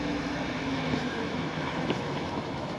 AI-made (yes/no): yes